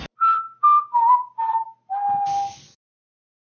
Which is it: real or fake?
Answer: real